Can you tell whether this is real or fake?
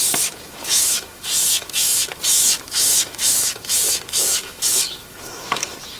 fake